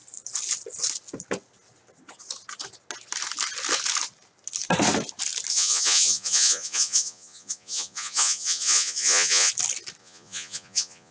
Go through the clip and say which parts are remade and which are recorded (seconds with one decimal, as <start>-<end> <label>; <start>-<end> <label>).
0.0-5.5 recorded; 5.5-9.5 remade; 9.5-10.0 recorded; 10.0-11.1 remade